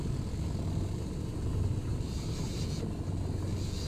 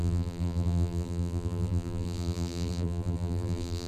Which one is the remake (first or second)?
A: second